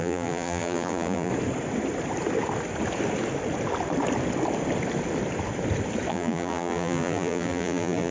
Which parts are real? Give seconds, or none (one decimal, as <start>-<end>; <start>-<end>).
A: 1.3-6.1